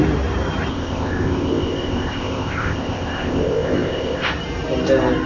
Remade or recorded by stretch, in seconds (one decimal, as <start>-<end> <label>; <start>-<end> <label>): 0.0-0.7 recorded; 0.7-4.3 remade; 4.3-5.3 recorded